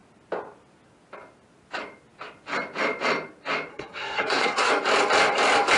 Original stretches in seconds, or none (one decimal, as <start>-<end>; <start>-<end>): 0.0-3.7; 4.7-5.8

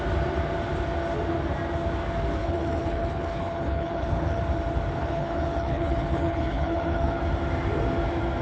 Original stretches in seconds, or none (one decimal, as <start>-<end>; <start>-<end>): 0.0-2.4; 4.4-5.0; 7.2-8.4

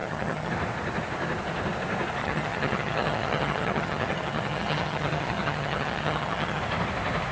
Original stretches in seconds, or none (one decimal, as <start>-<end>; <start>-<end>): 0.5-2.2; 6.6-7.3

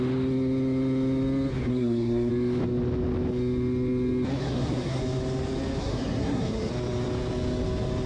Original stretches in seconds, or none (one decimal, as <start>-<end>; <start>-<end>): 0.0-1.7; 2.3-4.4; 5.0-5.8; 6.7-8.1